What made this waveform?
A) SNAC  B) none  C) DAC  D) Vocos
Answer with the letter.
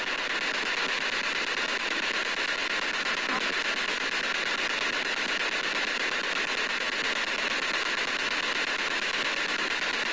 B